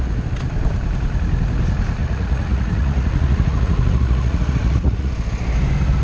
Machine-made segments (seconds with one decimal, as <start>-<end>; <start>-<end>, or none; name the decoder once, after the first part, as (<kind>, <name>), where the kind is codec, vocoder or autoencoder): 2.0-5.1 (vocoder, Vocos)